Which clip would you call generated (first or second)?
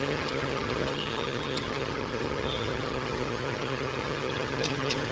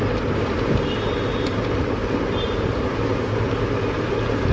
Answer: first